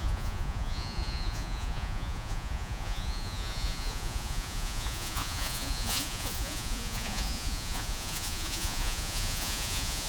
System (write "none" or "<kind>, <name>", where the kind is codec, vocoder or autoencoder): vocoder, Vocos